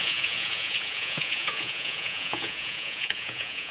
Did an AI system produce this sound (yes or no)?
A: yes